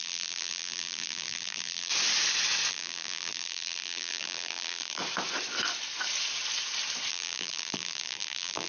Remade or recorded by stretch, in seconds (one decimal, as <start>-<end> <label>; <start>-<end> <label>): 0.0-1.9 remade; 1.9-2.7 recorded; 2.7-5.0 remade; 5.0-7.1 recorded; 7.1-8.7 remade